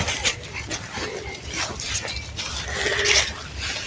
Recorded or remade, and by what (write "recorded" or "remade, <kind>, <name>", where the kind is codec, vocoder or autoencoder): recorded